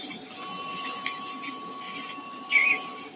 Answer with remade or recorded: recorded